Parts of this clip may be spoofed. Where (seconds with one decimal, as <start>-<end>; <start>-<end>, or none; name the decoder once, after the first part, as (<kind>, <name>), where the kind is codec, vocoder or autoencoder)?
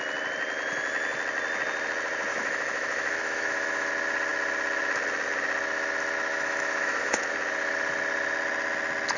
2.3-3.9 (autoencoder, DAC-VAE); 6.3-7.2